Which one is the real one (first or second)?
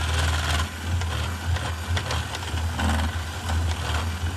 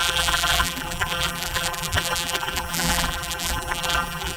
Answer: first